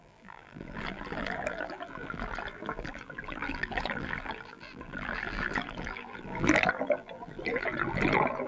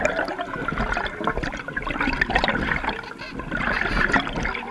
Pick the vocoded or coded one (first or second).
first